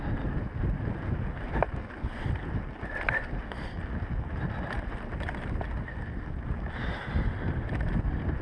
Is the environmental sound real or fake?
real